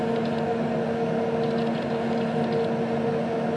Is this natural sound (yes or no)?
yes